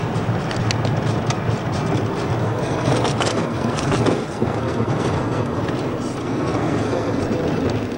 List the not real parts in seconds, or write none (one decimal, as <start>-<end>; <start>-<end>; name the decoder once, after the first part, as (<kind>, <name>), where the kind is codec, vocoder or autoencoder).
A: 2.4-5.6 (codec, SNAC); 6.2-7.2